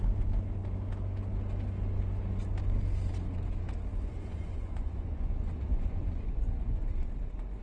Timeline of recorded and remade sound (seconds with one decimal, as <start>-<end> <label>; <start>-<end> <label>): 0.0-3.9 recorded; 3.9-6.9 remade; 6.9-7.6 recorded